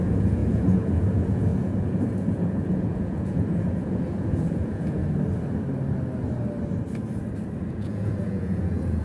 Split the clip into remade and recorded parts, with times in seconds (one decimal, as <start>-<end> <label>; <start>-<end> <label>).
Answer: 0.0-5.0 remade; 5.0-7.7 recorded; 7.7-9.0 remade